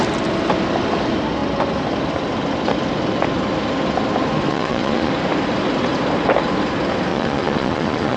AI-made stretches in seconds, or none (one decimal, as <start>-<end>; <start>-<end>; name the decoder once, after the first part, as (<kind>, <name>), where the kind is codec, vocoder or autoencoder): 4.5-5.1 (vocoder, Vocos); 7.1-8.2